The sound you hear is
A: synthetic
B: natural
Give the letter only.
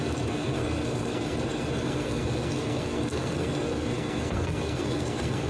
A